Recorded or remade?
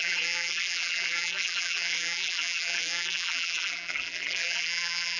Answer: remade